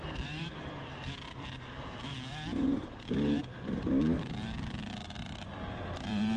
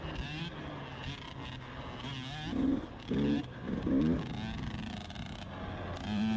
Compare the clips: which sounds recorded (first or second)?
second